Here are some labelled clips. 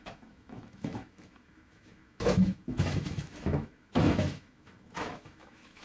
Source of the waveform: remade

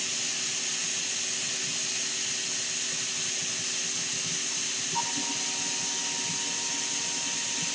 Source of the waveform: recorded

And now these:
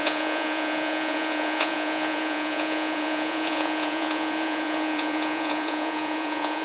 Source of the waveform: remade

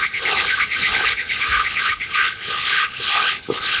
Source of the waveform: remade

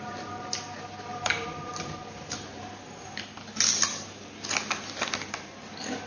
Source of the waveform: recorded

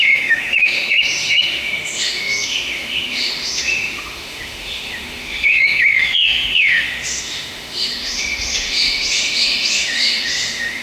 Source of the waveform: remade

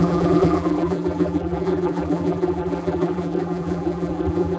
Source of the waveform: remade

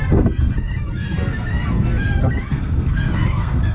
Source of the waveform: remade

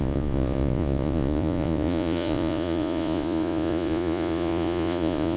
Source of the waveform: remade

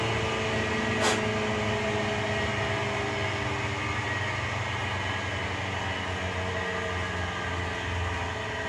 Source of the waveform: recorded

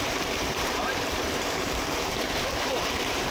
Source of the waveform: remade